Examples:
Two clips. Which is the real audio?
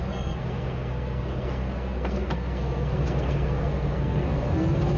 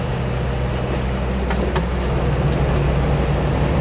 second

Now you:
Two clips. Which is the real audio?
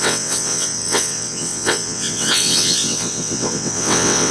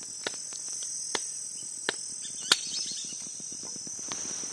second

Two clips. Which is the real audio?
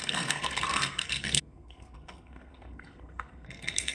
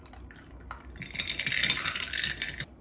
second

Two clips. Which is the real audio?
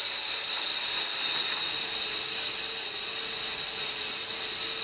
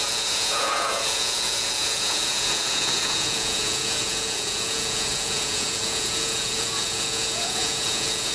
first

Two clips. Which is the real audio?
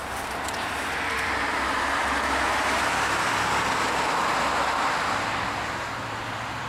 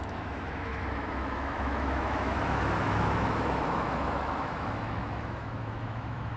first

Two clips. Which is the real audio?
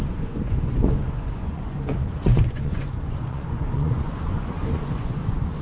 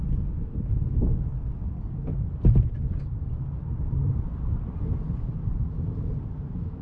second